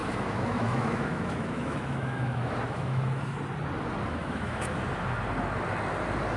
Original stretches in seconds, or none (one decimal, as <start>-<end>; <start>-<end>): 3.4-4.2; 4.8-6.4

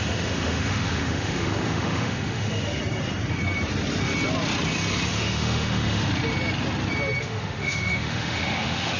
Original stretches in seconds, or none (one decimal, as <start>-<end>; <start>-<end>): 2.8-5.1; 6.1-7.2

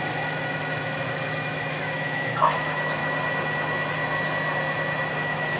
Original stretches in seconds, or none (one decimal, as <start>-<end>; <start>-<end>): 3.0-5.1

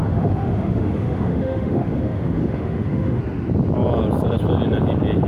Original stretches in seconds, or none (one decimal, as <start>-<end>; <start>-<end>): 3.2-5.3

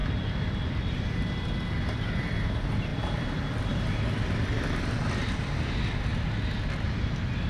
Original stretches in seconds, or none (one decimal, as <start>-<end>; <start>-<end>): 0.0-7.5